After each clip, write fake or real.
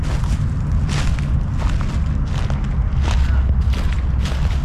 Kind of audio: real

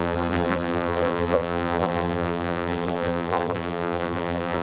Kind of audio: fake